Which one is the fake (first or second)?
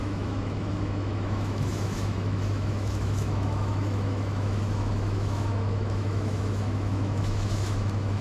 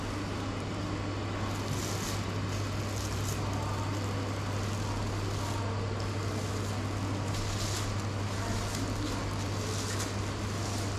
first